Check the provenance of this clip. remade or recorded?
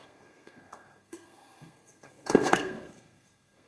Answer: remade